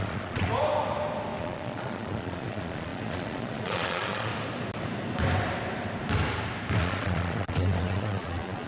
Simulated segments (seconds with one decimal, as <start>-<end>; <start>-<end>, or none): 0.0-0.5; 1.4-4.3; 6.8-8.7